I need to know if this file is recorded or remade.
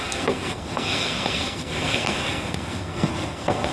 remade